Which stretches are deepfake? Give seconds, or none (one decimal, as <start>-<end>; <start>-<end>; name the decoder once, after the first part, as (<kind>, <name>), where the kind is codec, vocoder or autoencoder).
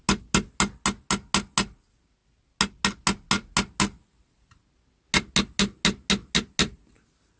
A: none